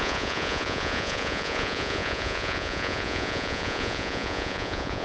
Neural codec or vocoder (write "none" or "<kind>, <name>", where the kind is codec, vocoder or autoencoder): vocoder, Vocos